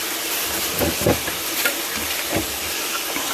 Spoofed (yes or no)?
no